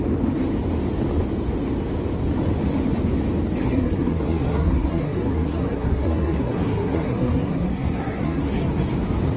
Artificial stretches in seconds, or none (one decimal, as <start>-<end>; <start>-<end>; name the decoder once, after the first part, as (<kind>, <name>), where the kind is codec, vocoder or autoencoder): 3.6-8.6 (codec, SNAC)